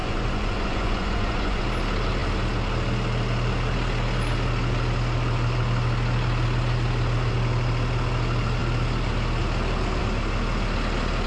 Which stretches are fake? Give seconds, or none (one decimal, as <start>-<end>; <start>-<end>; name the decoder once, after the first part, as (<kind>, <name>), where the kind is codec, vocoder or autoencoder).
0.0-1.6 (vocoder, Vocos)